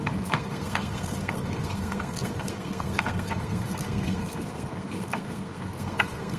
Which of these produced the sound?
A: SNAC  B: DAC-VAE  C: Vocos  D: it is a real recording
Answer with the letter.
A